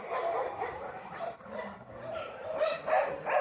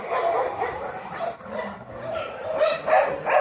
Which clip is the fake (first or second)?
first